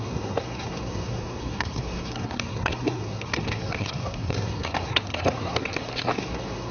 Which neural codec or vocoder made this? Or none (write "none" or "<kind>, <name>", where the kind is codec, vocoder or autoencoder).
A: codec, SNAC